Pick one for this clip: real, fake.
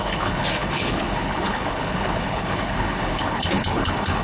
fake